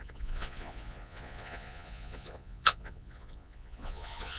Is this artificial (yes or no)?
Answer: yes